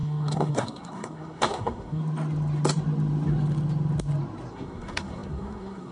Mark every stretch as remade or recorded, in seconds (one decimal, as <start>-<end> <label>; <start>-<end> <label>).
0.0-2.0 remade; 2.0-4.5 recorded; 4.5-5.9 remade